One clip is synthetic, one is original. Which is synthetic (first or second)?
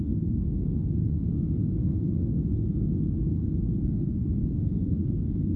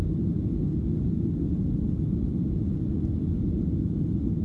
first